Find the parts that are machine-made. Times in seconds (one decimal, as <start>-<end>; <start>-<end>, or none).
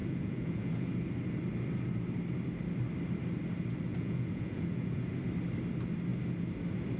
0.0-0.9; 3.9-5.1